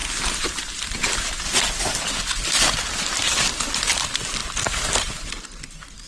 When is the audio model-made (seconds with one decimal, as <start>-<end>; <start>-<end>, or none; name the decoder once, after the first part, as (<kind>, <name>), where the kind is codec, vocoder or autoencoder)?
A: none